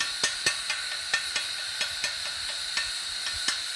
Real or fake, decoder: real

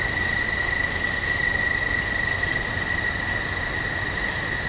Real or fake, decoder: real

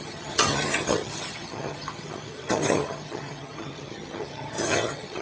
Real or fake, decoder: fake, vocoder, HiFi-GAN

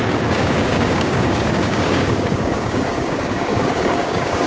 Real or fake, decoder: fake, codec, DAC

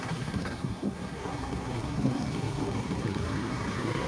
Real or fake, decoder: fake, codec, SNAC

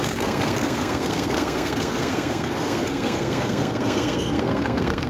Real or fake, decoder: fake, codec, SNAC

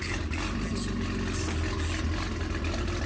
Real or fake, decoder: real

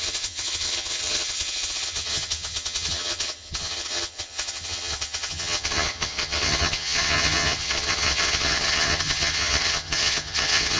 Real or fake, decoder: fake, vocoder, HiFi-GAN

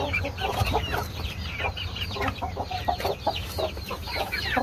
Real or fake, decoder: real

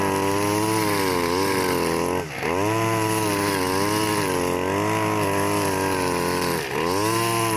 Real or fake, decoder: real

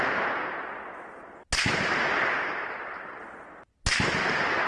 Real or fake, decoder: real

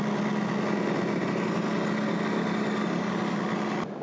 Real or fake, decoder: real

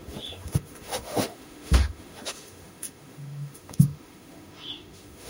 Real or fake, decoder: fake, autoencoder, DAC-VAE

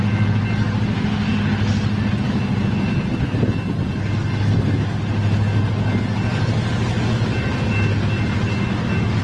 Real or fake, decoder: real